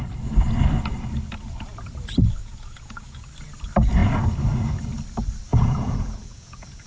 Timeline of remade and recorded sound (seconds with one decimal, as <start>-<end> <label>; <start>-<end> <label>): 0.0-2.4 recorded; 2.4-3.3 remade; 3.3-5.5 recorded; 5.5-6.9 remade

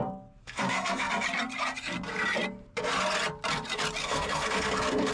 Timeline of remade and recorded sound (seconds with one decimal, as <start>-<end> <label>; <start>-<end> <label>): 0.0-0.4 recorded; 0.4-1.1 remade; 1.1-4.0 recorded; 4.0-5.1 remade

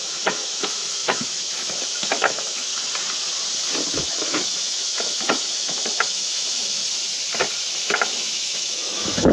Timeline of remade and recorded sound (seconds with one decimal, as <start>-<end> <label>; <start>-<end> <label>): 0.0-2.7 remade; 2.7-3.9 recorded; 3.9-6.8 remade; 6.8-7.8 recorded; 7.8-9.3 remade

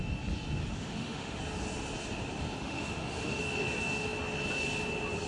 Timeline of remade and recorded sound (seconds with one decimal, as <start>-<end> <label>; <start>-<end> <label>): 0.0-0.6 recorded; 0.6-1.4 remade; 1.4-2.6 recorded; 2.6-3.4 remade; 3.4-5.3 recorded

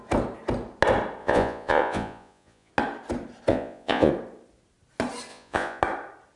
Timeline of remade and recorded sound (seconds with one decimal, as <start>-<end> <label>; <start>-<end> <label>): 0.0-1.2 recorded; 1.2-2.7 remade; 2.7-3.5 recorded; 3.5-4.1 remade; 4.1-5.3 recorded; 5.3-5.8 remade; 5.8-6.4 recorded

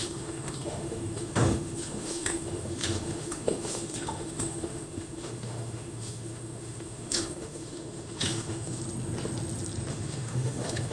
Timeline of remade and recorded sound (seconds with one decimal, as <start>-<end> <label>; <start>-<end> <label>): 0.0-8.8 remade; 8.8-9.9 recorded; 9.9-10.9 remade

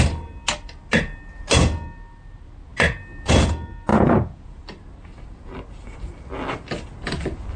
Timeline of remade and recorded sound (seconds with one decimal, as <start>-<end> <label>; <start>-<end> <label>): 0.0-3.9 recorded; 3.9-4.6 remade; 4.6-7.6 recorded

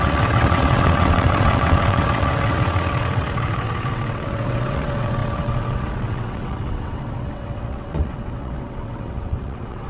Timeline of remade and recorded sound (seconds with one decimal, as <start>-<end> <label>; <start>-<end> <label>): 0.0-9.9 remade